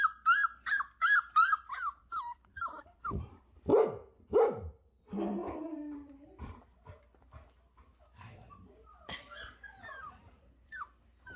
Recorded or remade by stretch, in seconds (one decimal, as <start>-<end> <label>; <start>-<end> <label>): 0.0-3.7 remade; 3.7-4.3 recorded; 4.3-11.4 remade